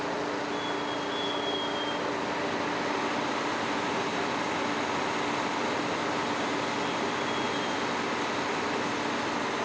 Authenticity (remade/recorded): recorded